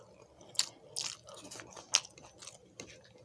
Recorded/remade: recorded